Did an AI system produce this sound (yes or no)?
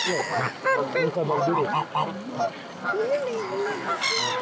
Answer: no